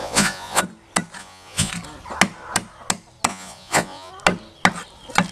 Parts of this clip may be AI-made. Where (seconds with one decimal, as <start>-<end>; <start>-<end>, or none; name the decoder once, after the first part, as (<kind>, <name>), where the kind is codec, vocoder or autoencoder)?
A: 0.0-0.6 (vocoder, Vocos); 1.2-1.7; 3.3-4.1